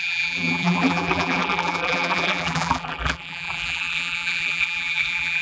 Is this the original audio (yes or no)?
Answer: no